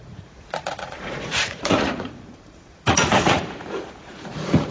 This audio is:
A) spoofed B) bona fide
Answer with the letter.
A